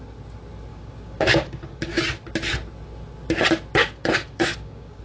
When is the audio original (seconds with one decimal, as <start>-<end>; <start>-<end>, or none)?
0.0-0.7; 2.0-3.8